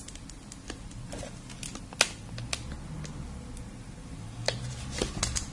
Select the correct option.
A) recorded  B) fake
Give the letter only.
A